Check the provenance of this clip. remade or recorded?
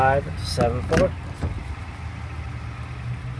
recorded